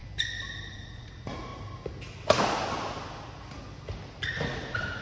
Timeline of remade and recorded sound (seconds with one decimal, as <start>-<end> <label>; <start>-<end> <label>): 0.0-0.7 recorded; 0.7-1.5 remade; 1.5-4.5 recorded; 4.5-5.0 remade